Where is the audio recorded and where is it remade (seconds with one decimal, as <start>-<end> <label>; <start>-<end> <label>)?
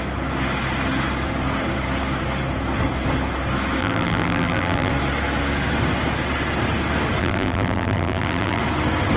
0.0-3.8 recorded; 3.8-4.9 remade; 4.9-7.2 recorded; 7.2-8.6 remade; 8.6-9.2 recorded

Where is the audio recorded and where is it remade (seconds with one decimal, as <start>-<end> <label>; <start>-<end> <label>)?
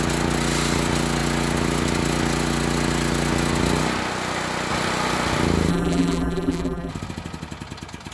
0.0-5.7 recorded; 5.7-6.9 remade; 6.9-8.1 recorded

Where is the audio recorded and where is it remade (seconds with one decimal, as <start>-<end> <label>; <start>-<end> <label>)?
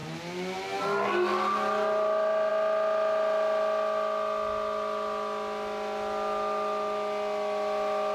0.0-2.5 remade; 2.5-8.1 recorded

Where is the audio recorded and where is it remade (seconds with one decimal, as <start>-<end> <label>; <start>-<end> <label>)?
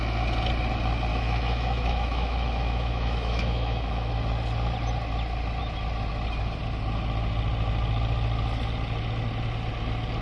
0.0-1.1 recorded; 1.1-4.1 remade; 4.1-10.2 recorded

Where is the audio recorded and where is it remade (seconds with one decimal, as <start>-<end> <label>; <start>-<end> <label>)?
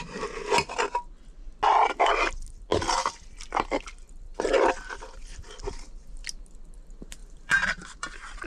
0.0-4.3 recorded; 4.3-5.7 remade; 5.7-7.2 recorded; 7.2-8.5 remade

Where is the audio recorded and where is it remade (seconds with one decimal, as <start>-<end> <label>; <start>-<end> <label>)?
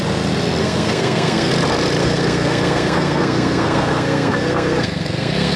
0.0-0.6 recorded; 0.6-1.5 remade; 1.5-2.0 recorded; 2.0-5.6 remade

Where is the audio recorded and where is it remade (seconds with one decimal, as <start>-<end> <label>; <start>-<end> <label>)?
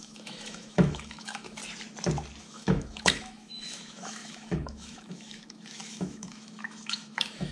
0.0-1.6 remade; 1.6-2.4 recorded; 2.4-7.5 remade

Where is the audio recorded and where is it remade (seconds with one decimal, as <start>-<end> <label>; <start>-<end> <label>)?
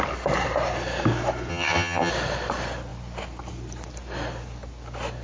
0.0-1.5 recorded; 1.5-2.1 remade; 2.1-5.2 recorded